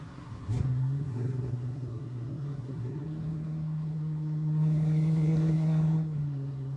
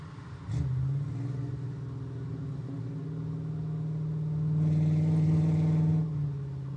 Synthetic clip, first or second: first